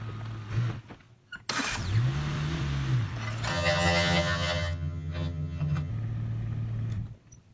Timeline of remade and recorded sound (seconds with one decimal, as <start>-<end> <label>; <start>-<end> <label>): 0.0-3.5 recorded; 3.5-5.9 remade; 5.9-7.5 recorded